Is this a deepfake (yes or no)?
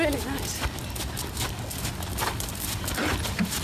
no